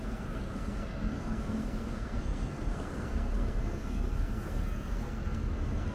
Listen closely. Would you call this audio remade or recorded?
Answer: remade